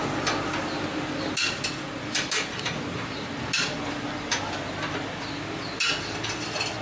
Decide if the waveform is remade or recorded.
recorded